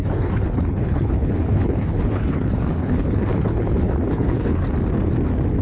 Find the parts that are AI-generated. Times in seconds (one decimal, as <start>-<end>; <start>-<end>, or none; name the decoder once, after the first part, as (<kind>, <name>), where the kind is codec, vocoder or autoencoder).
0.0-4.6 (codec, HILCodec)